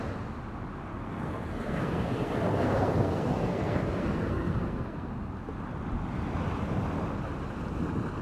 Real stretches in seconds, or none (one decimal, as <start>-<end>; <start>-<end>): 0.0-0.9; 5.1-8.2